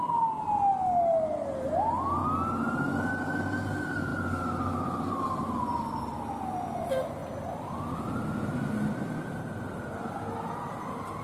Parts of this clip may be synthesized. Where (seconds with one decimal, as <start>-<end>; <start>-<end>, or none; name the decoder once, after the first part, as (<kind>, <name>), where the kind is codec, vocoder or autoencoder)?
none